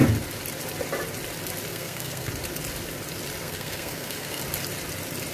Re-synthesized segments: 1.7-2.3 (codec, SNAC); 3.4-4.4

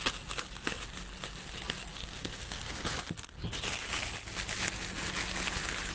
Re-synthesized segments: 1.9-2.6 (codec, SNAC)